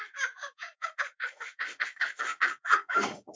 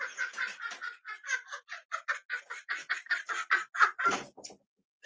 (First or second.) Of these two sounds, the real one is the second